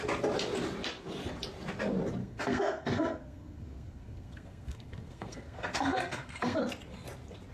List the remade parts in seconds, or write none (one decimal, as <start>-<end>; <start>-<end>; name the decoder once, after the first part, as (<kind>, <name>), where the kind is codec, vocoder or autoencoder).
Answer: 2.2-6.6 (codec, SNAC)